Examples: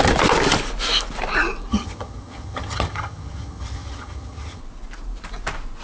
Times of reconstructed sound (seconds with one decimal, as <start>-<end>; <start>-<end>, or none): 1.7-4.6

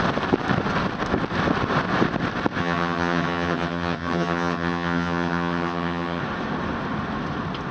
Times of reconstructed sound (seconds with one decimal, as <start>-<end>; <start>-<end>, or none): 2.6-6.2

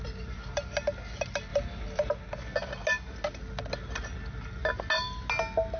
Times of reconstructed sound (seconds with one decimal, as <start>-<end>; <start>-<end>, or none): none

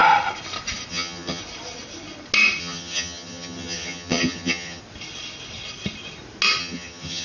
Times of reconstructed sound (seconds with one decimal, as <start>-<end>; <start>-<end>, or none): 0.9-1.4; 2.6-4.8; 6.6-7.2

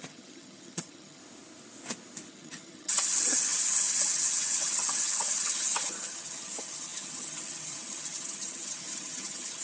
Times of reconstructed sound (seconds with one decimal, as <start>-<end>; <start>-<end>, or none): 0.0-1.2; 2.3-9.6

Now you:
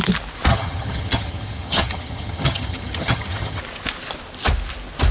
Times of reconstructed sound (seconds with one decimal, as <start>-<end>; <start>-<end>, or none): 0.5-3.6

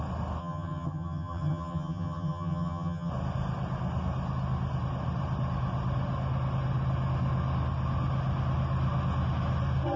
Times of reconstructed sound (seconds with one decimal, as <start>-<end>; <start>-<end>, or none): 0.4-3.1

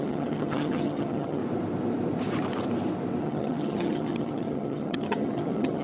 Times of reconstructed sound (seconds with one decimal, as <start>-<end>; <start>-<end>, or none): 0.0-1.4; 3.2-5.8